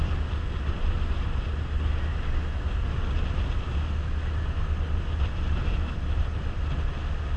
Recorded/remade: recorded